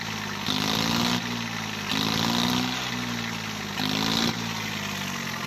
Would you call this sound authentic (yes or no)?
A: yes